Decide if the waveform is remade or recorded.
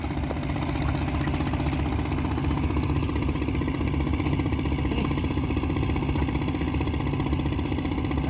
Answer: recorded